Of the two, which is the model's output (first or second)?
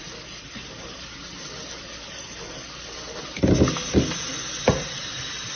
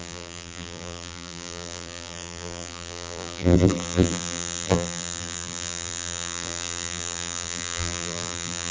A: second